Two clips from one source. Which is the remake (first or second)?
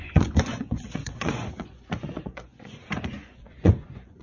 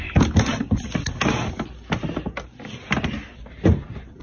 first